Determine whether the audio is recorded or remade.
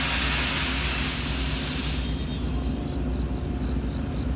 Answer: recorded